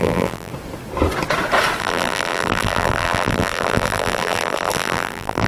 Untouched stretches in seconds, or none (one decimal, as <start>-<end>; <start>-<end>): 0.5-1.8